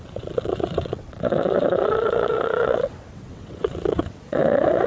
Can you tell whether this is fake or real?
fake